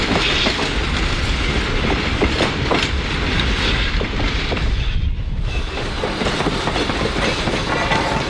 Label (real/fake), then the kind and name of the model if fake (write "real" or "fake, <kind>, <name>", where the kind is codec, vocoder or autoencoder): fake, vocoder, BigVGAN v2